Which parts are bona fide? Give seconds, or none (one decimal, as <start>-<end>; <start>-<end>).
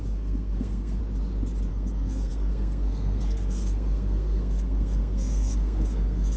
1.0-1.7